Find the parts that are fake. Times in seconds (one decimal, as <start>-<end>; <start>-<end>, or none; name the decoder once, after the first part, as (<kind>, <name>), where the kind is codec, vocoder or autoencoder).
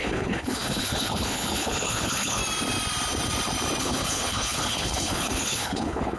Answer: 0.0-2.4 (codec, HILCodec); 3.8-6.2